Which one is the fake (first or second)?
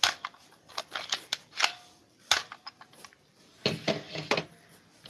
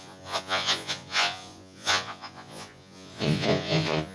second